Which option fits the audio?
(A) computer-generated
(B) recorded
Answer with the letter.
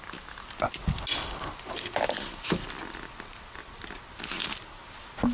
B